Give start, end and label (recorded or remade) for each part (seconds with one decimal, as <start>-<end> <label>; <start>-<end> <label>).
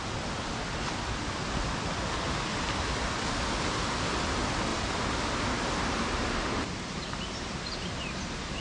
0.0-8.6 recorded